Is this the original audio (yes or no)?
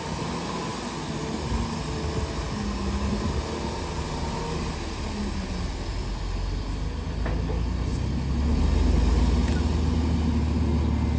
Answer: yes